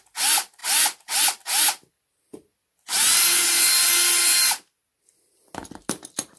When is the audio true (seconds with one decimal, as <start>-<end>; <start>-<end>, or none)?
0.0-6.4